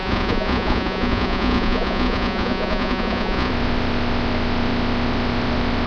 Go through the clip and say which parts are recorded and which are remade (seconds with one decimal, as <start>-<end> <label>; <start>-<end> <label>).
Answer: 0.0-3.5 remade; 3.5-5.9 recorded